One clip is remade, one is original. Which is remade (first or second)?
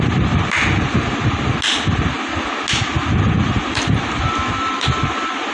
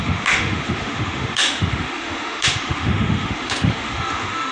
second